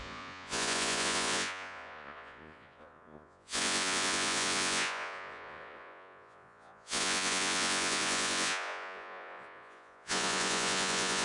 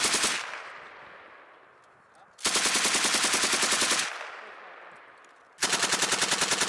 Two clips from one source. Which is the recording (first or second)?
second